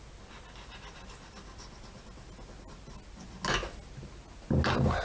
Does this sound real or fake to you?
real